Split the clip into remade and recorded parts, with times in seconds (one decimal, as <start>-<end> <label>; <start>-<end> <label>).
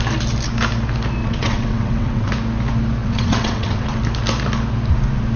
0.0-1.2 recorded; 1.2-2.3 remade; 2.3-3.0 recorded; 3.0-4.0 remade; 4.0-5.4 recorded